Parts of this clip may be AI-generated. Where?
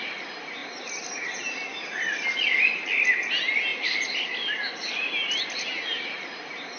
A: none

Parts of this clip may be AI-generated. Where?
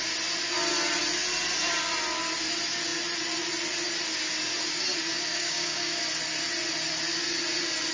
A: 5.3-6.0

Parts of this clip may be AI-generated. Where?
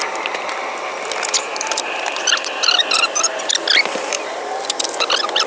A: 1.5-4.8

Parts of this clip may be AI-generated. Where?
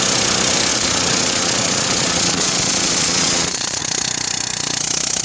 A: 0.7-3.8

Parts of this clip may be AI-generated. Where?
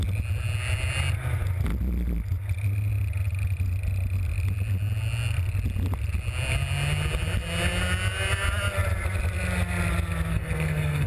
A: 10.3-11.1